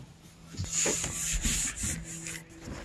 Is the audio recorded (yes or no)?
yes